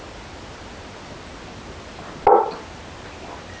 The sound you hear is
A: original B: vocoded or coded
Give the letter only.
A